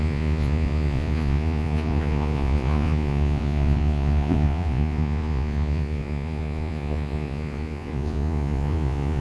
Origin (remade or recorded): remade